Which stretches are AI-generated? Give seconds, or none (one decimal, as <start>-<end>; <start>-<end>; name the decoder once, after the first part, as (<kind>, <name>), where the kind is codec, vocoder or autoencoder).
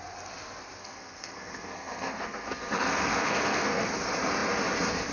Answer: 0.8-3.9 (codec, SNAC)